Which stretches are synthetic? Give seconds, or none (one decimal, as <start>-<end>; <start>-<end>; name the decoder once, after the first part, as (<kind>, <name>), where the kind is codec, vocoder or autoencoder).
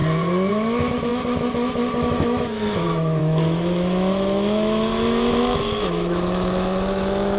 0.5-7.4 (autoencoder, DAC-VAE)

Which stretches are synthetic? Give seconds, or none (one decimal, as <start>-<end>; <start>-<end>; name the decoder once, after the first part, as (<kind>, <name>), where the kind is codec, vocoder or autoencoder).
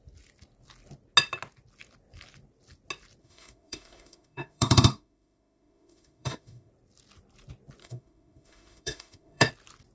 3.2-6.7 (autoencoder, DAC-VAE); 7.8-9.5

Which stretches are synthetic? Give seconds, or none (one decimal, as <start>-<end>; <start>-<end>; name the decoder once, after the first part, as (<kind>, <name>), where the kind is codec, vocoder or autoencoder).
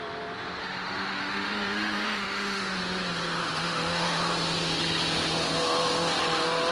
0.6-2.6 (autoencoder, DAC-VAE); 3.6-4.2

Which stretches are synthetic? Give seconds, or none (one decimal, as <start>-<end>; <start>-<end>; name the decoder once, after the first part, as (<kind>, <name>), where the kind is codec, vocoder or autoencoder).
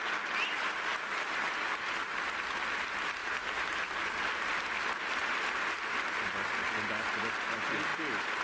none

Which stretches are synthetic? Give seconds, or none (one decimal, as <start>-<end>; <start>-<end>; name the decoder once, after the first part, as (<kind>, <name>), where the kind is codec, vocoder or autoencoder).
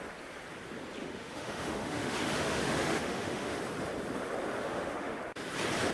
1.0-3.6 (autoencoder, DAC-VAE); 4.6-5.2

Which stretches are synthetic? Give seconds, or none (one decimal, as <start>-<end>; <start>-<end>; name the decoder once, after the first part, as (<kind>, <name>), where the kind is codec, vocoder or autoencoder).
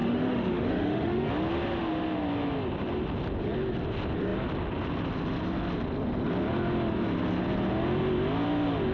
0.0-1.3 (autoencoder, DAC-VAE)